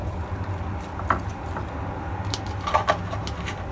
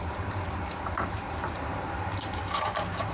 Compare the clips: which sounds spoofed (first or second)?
second